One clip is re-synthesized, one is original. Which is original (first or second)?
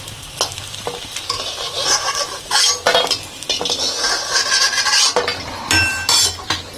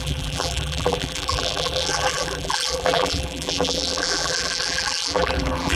first